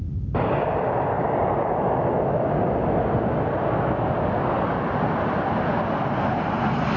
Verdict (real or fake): real